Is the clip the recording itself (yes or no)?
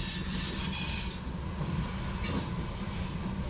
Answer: yes